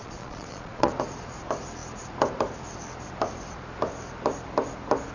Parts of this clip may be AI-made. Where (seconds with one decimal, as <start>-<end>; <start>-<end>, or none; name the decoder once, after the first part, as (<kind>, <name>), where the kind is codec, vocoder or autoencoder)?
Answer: 0.0-0.9 (vocoder, Vocos)